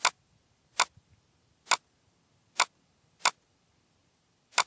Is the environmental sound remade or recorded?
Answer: recorded